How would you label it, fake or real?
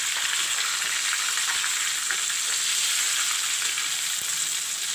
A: real